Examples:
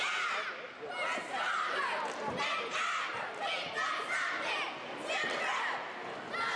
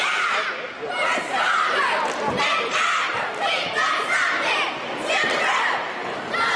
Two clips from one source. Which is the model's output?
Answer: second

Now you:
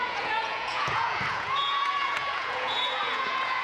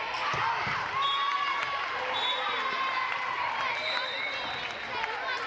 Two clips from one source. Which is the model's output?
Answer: first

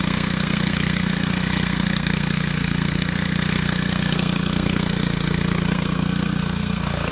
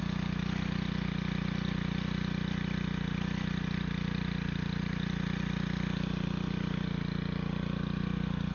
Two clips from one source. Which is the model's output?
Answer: first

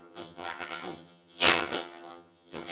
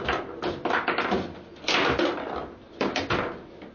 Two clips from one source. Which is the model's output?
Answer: first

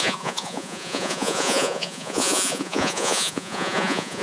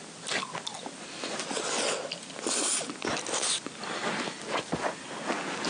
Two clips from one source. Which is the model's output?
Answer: first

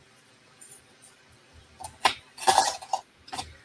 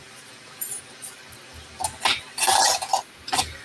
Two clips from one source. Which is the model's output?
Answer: first